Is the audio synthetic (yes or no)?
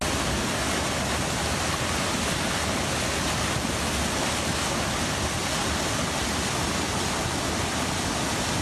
no